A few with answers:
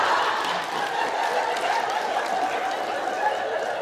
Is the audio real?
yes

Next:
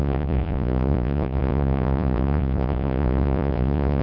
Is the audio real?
no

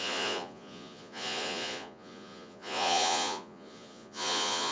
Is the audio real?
no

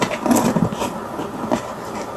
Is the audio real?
yes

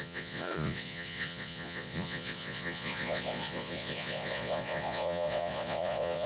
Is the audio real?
no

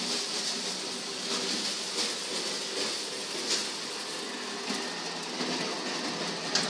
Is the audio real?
yes